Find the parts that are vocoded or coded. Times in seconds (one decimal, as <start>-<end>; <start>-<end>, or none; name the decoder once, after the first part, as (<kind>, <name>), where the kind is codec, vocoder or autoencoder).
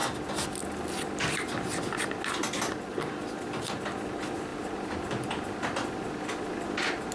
none